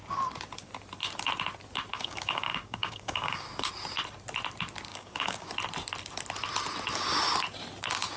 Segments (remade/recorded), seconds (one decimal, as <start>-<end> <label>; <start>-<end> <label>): 0.0-1.9 recorded; 1.9-3.7 remade; 3.7-4.9 recorded; 4.9-5.5 remade; 5.5-8.2 recorded